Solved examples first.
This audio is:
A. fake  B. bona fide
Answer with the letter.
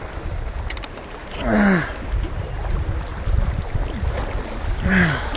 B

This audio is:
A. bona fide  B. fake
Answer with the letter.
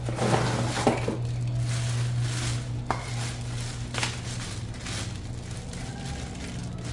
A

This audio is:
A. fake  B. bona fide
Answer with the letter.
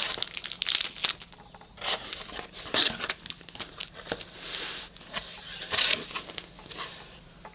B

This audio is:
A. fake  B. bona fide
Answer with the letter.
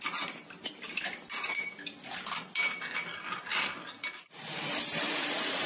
B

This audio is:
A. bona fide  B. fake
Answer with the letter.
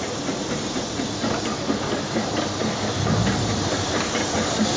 A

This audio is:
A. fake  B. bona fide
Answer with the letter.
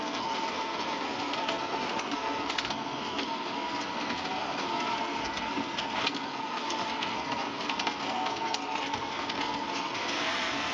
A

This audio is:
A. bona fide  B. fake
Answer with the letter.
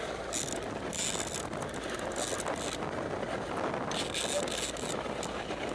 A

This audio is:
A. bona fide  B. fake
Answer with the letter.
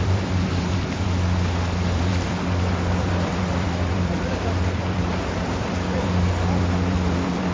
B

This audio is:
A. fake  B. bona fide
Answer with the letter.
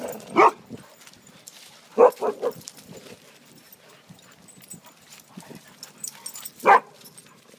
A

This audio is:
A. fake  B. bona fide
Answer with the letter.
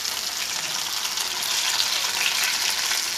B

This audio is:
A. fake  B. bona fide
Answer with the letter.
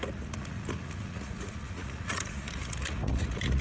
A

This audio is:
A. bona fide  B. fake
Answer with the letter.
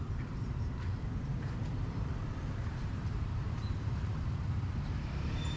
B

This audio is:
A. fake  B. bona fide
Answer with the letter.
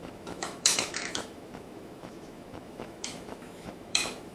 A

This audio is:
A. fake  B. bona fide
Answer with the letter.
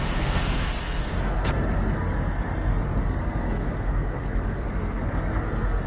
A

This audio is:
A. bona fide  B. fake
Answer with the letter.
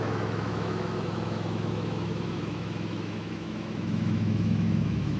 B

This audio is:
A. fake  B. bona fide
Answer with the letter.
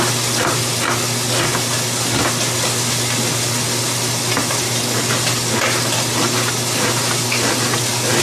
B